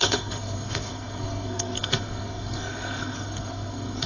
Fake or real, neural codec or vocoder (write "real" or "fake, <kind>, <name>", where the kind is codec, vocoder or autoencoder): fake, codec, SNAC